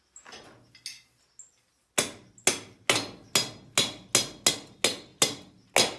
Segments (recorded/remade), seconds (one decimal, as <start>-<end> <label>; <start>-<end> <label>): 0.0-6.0 recorded